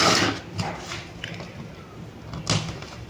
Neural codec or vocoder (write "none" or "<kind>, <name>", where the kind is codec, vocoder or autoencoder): none